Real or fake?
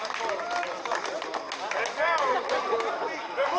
real